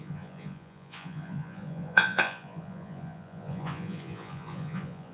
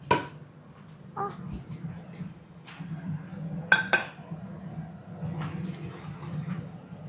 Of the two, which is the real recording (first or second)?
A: second